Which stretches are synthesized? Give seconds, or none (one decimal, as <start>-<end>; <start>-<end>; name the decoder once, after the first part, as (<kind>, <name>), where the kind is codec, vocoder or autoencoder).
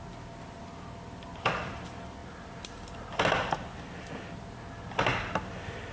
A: none